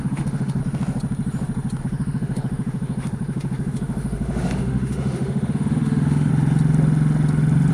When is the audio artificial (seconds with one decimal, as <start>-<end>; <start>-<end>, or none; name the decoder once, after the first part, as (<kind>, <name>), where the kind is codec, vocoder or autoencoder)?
0.0-0.6 (autoencoder, DAC-VAE); 1.8-6.3